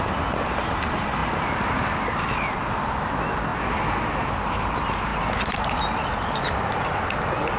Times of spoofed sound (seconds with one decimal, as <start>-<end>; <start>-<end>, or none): none